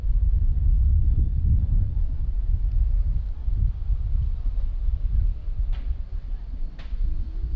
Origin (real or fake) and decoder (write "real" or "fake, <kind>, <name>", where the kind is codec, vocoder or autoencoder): real